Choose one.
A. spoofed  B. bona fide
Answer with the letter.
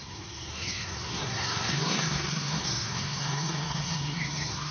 A